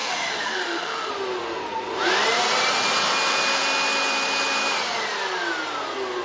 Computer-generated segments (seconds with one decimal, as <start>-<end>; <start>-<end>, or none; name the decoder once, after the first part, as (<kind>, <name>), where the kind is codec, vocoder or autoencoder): 0.0-1.1 (autoencoder, DAC-VAE)